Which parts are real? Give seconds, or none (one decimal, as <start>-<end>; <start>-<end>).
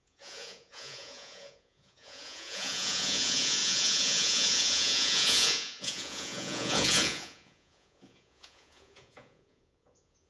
none